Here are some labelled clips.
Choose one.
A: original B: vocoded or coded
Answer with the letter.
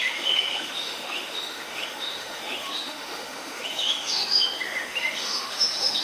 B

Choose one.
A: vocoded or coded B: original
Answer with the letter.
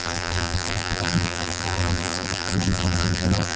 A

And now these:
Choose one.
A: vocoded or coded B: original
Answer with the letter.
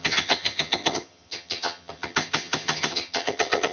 A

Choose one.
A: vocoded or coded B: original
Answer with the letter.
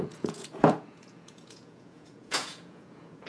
A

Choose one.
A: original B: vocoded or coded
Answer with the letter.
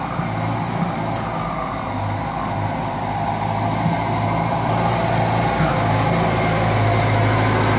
A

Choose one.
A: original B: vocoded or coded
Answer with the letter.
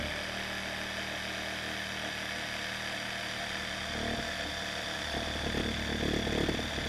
A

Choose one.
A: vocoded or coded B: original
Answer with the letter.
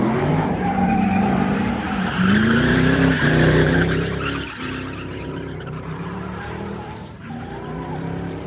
A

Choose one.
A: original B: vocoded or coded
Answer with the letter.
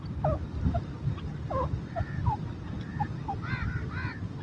A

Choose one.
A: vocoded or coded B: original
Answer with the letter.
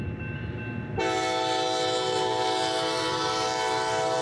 B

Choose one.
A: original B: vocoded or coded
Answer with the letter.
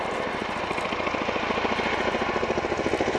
A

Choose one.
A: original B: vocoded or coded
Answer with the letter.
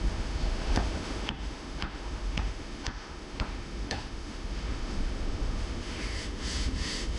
B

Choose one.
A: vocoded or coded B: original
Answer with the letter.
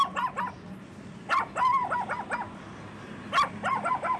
B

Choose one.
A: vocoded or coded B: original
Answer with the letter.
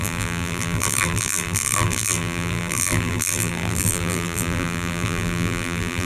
A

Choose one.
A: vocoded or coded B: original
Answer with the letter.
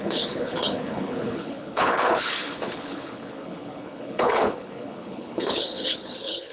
A